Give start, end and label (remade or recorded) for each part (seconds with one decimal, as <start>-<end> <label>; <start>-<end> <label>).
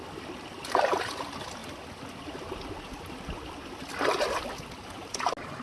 0.0-5.6 recorded